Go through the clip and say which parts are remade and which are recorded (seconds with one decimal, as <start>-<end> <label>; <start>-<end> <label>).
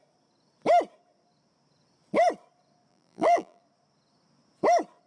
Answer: 0.0-2.9 recorded; 2.9-3.6 remade; 3.6-5.1 recorded